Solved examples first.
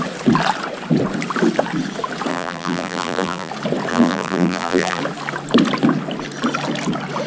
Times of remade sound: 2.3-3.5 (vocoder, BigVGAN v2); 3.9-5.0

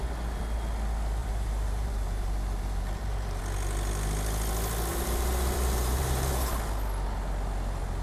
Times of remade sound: 1.2-3.4 (vocoder, BigVGAN v2); 4.9-6.5

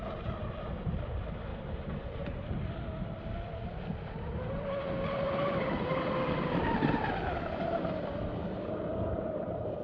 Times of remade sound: 1.5-2.7 (vocoder, BigVGAN v2)

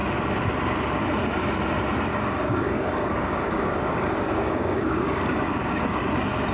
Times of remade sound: 2.1-6.0 (codec, DAC)

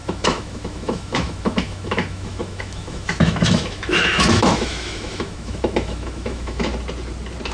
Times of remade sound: 0.0-6.7 (autoencoder, DAC-VAE)

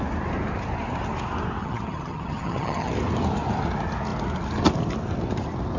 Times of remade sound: 1.6-2.9 (vocoder, HiFi-GAN)

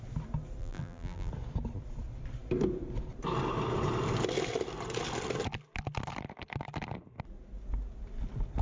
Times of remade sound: 0.6-1.3 (vocoder, BigVGAN v2)